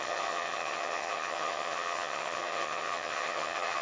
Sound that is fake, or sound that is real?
fake